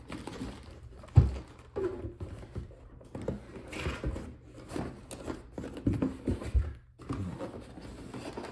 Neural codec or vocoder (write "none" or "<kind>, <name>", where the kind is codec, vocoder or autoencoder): none